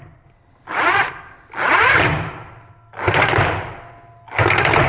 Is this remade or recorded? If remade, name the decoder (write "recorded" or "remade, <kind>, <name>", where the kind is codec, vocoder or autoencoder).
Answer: recorded